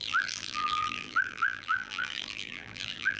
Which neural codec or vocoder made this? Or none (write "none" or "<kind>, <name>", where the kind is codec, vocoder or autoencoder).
vocoder, BigVGAN v2